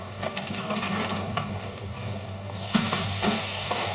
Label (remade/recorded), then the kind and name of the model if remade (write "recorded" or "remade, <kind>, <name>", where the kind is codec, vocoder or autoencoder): remade, codec, DAC